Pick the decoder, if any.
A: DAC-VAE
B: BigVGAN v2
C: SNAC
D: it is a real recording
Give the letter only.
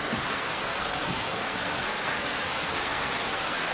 C